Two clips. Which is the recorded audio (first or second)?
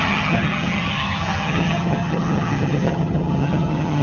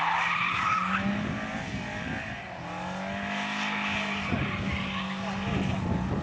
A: second